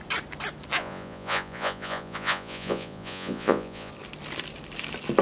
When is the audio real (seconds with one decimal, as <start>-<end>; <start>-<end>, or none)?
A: 0.0-0.8; 3.9-5.2